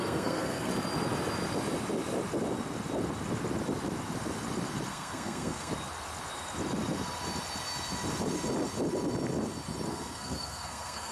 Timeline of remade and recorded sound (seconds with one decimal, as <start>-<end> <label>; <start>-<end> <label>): 0.0-0.7 remade; 0.7-4.9 recorded; 4.9-5.7 remade; 5.7-9.9 recorded; 9.9-11.1 remade